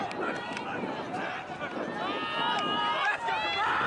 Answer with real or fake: real